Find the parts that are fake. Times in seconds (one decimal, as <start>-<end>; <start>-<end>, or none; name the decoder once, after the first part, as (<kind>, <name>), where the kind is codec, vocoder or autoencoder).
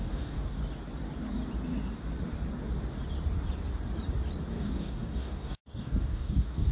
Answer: 0.0-0.6 (codec, DAC); 4.5-6.7